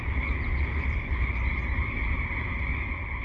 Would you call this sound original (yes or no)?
yes